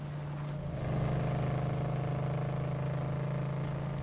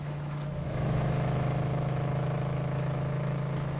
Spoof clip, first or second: second